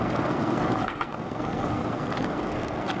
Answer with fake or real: fake